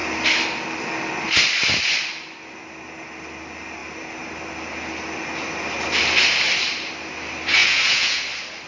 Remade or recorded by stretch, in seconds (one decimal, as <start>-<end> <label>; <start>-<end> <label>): 0.0-7.6 recorded; 7.6-8.2 remade; 8.2-8.7 recorded